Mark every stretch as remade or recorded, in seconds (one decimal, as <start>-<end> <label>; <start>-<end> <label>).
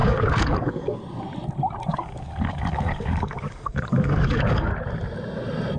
0.0-1.0 remade; 1.0-1.9 recorded; 1.9-4.7 remade; 4.7-5.8 recorded